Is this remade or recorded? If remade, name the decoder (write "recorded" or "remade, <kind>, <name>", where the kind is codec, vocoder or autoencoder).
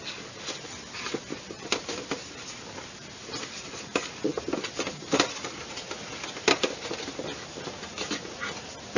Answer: recorded